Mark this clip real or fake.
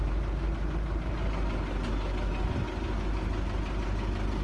real